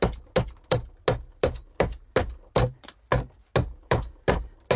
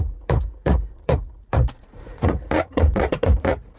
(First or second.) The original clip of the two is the first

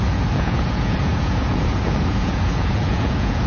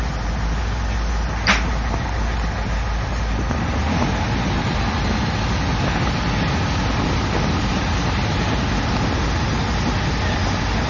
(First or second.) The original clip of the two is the second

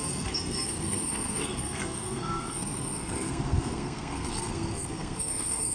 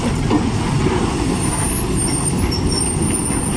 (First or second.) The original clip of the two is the second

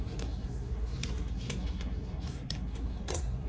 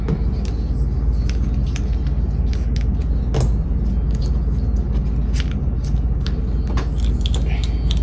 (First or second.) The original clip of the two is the second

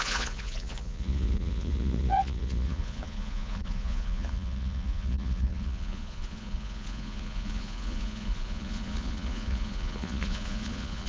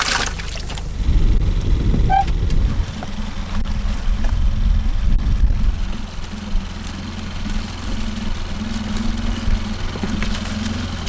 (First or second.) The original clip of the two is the second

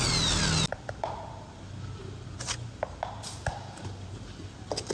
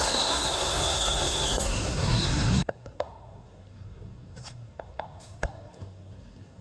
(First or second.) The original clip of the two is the first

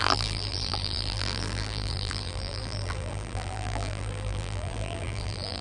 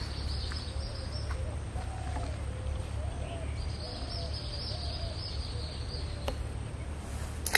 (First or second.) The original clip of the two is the second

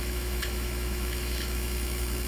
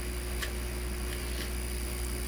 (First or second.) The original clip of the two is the second